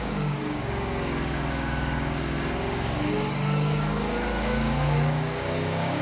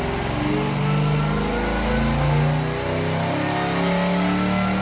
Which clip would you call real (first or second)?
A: second